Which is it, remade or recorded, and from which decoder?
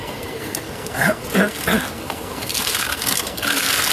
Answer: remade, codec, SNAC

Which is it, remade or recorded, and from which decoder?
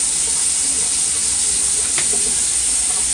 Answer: recorded